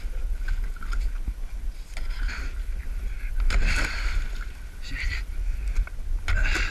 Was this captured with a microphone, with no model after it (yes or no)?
yes